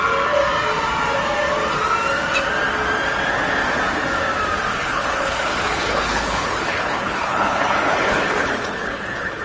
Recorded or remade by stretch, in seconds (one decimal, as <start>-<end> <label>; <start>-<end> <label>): 0.0-4.7 recorded; 4.7-9.4 remade